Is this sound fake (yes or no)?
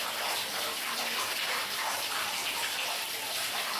no